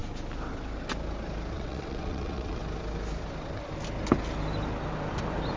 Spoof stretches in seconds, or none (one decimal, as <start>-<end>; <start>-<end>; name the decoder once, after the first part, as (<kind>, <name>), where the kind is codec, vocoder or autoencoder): 1.5-2.6 (vocoder, WaveNeXt)